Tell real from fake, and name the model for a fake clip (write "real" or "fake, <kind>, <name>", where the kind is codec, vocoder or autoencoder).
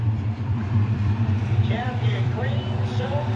fake, vocoder, BigVGAN v2